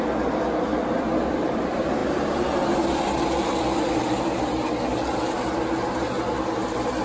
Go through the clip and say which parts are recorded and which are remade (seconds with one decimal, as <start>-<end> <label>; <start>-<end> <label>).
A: 0.0-7.0 recorded